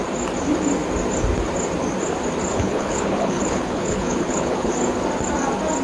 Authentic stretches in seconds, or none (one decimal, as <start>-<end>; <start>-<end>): 0.0-2.5; 4.7-5.8